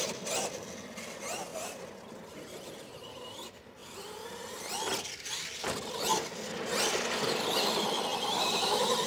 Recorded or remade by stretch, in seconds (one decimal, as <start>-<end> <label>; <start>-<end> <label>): 0.0-1.5 recorded; 1.5-3.3 remade; 3.3-8.1 recorded; 8.1-8.7 remade; 8.7-9.1 recorded